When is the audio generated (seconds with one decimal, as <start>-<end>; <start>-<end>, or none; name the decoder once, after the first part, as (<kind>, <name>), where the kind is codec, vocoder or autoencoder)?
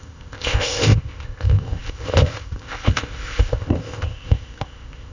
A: 0.0-5.1 (codec, ZipCodec)